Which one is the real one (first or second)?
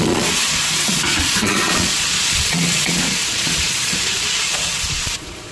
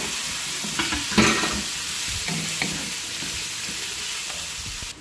second